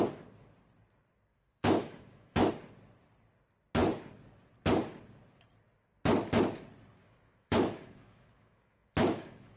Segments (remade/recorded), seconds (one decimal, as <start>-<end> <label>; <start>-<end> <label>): 0.0-1.3 recorded; 1.3-2.5 remade; 2.5-7.0 recorded; 7.0-9.6 remade